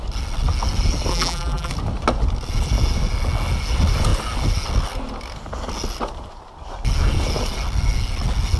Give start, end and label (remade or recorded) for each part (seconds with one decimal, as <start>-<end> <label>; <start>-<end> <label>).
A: 0.0-1.1 recorded; 1.1-1.7 remade; 1.7-8.6 recorded